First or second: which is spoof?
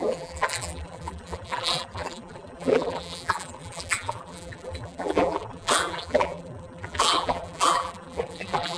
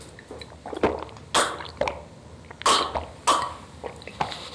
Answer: first